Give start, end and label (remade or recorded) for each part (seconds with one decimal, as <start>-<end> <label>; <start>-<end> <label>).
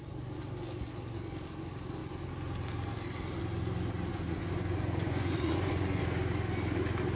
0.0-4.1 recorded; 4.1-6.0 remade; 6.0-7.1 recorded